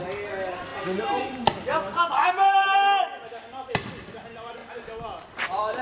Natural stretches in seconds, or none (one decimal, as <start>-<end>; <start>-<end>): 0.0-5.8